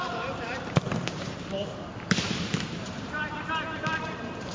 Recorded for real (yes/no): no